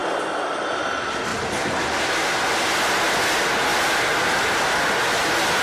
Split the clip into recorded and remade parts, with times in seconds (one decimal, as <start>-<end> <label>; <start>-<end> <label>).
0.0-0.8 remade; 0.8-3.7 recorded; 3.7-4.9 remade; 4.9-5.6 recorded